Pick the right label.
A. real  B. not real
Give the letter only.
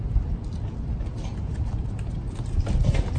A